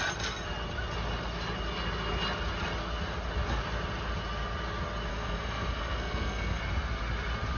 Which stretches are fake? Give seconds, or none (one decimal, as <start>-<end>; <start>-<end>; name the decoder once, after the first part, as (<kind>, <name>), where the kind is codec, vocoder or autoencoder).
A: 5.1-6.6 (codec, SNAC)